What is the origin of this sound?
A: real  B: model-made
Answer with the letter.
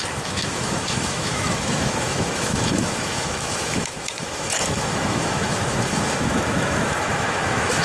B